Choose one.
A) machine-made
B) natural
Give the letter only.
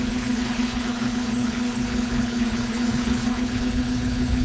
A